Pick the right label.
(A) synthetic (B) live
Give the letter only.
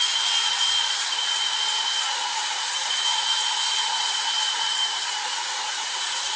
A